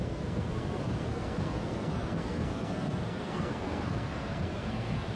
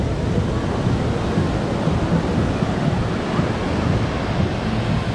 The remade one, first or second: first